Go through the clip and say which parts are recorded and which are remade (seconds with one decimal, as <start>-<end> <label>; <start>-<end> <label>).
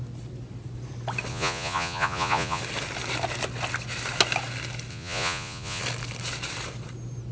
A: 0.0-1.3 recorded; 1.3-2.6 remade; 2.6-4.9 recorded; 4.9-5.8 remade; 5.8-7.3 recorded